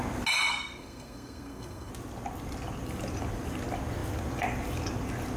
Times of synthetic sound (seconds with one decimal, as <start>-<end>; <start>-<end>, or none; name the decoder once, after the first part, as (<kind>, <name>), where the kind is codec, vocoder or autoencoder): 0.5-1.9 (codec, SNAC)